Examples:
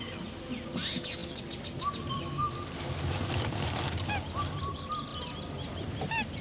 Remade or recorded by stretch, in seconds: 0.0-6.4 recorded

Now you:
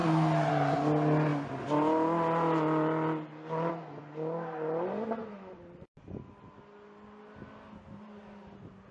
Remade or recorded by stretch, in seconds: 0.0-5.2 recorded; 5.2-5.9 remade; 5.9-8.9 recorded

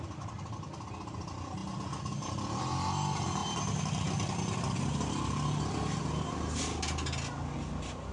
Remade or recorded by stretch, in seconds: 0.0-8.1 recorded

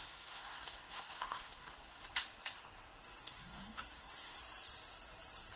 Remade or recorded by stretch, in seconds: 0.0-2.0 remade; 2.0-3.2 recorded; 3.2-4.4 remade; 4.4-5.6 recorded

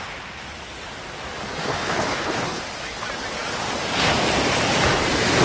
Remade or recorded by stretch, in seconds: 0.0-1.7 recorded; 1.7-2.6 remade; 2.6-5.4 recorded

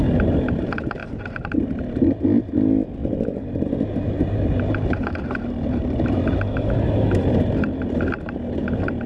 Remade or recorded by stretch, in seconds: 0.0-1.0 recorded; 1.0-1.7 remade; 1.7-3.0 recorded; 3.0-7.4 remade; 7.4-9.1 recorded